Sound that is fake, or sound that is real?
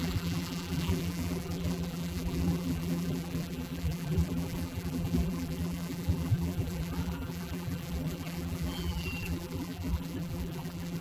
fake